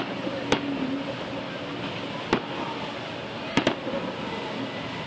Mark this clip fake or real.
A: real